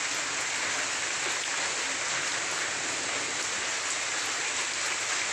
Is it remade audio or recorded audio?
recorded